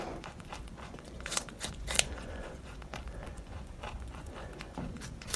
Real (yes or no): no